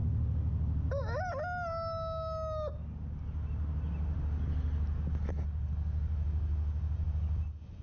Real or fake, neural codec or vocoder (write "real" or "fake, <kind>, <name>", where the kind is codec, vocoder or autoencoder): real